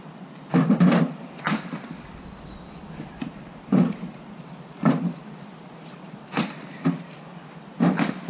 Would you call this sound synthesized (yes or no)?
yes